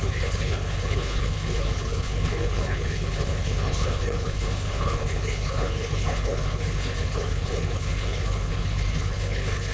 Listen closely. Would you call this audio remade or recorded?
remade